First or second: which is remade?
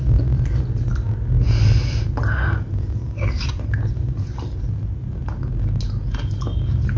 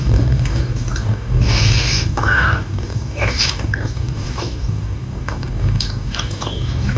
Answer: second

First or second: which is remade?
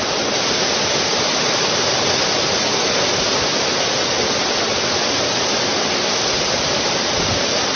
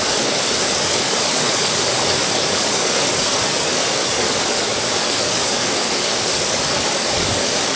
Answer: second